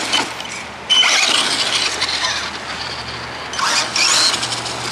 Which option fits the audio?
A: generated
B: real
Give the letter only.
B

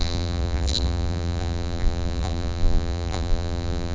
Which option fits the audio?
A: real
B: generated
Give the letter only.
B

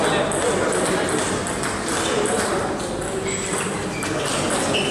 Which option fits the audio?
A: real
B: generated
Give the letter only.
A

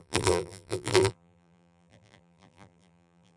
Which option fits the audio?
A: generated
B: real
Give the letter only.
A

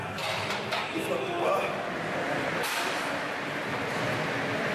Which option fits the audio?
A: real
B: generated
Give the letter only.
B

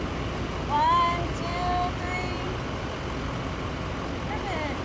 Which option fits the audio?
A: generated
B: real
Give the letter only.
B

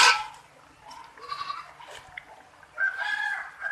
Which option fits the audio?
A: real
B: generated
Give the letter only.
A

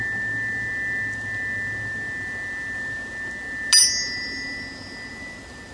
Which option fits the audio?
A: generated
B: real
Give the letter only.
B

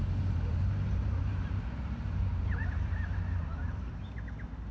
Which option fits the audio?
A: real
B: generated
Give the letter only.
B